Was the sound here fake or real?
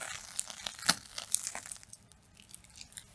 real